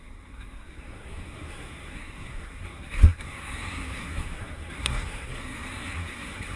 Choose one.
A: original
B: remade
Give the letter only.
B